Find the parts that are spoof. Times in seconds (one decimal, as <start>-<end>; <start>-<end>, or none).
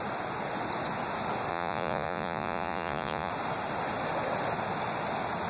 1.5-3.3